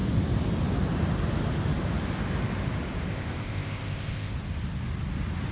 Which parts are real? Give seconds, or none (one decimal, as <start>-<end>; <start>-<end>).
0.0-3.1; 4.3-5.5